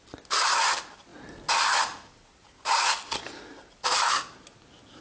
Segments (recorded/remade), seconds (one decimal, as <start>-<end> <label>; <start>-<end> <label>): 0.0-5.0 recorded